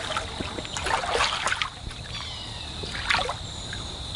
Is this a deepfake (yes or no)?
no